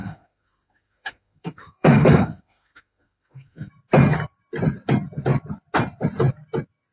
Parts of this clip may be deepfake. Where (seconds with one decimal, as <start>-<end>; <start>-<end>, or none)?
0.0-3.7